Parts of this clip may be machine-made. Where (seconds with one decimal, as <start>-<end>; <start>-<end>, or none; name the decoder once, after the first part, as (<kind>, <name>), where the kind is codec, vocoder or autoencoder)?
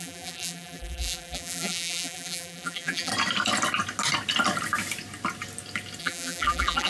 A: 0.0-3.1 (vocoder, BigVGAN v2); 6.0-6.9